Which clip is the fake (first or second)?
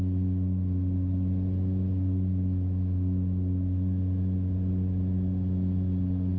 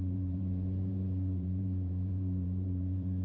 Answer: second